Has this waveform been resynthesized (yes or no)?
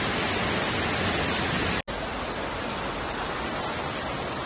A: no